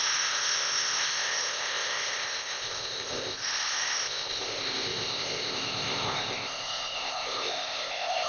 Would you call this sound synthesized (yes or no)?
yes